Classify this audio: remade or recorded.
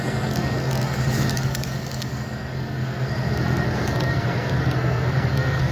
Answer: remade